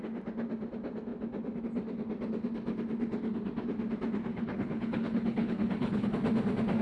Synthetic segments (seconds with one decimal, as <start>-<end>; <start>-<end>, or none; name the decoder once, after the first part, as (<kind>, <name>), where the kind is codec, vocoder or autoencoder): 4.3-6.1 (codec, HILCodec)